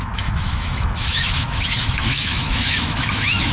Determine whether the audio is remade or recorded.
remade